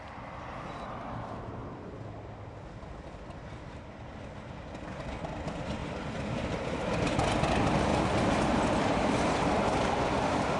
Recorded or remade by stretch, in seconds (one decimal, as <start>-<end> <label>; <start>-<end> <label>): 0.0-1.6 recorded; 1.6-2.5 remade; 2.5-5.8 recorded; 5.8-6.5 remade; 6.5-10.6 recorded